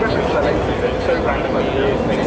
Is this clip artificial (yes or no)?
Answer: no